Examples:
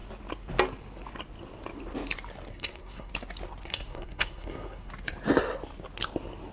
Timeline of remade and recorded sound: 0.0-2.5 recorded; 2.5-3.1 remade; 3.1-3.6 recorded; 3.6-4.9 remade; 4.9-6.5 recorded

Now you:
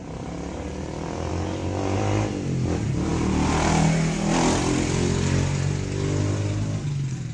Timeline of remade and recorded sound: 0.0-7.3 recorded

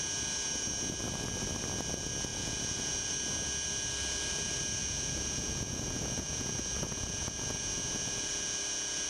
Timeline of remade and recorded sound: 0.0-2.3 recorded; 2.3-3.1 remade; 3.1-4.8 recorded; 4.8-9.1 remade

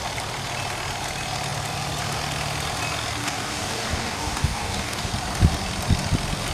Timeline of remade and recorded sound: 0.0-3.2 recorded; 3.2-5.1 remade; 5.1-6.5 recorded

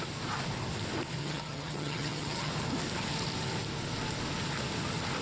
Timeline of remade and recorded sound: 0.0-1.2 recorded; 1.2-2.5 remade; 2.5-5.2 recorded